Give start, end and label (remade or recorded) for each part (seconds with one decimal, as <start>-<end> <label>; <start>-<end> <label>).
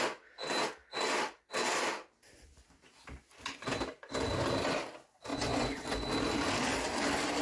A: 0.0-5.3 recorded; 5.3-6.1 remade; 6.1-7.4 recorded